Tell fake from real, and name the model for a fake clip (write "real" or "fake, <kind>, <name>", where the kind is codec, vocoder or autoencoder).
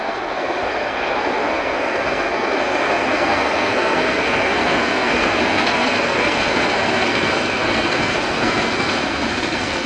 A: fake, codec, SNAC